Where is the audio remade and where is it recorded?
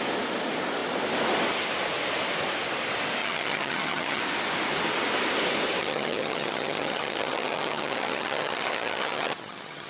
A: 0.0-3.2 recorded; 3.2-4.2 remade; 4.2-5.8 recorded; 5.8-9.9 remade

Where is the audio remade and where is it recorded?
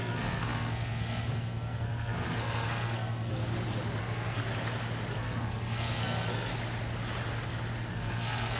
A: 0.0-3.3 remade; 3.3-4.0 recorded; 4.0-4.4 remade; 4.4-5.1 recorded; 5.1-6.5 remade; 6.5-7.9 recorded; 7.9-8.6 remade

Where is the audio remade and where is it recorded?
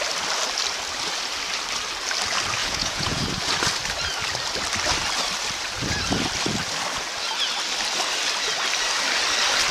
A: 0.0-2.6 recorded; 2.6-3.2 remade; 3.2-9.7 recorded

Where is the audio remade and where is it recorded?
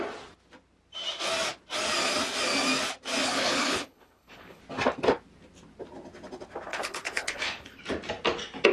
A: 0.0-3.2 recorded; 3.2-4.6 remade; 4.6-6.7 recorded; 6.7-7.8 remade; 7.8-8.7 recorded